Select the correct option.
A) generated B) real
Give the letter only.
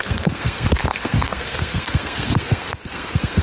A